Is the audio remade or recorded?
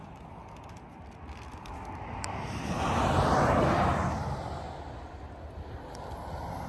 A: recorded